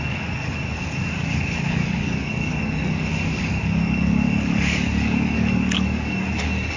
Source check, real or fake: fake